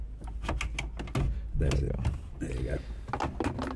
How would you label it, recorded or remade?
recorded